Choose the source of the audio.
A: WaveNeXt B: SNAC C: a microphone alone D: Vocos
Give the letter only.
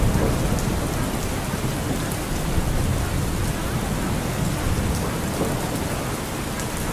C